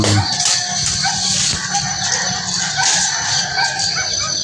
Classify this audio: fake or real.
real